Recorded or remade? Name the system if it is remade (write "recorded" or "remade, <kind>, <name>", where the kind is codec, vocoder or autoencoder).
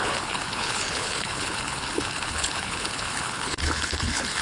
remade, codec, HILCodec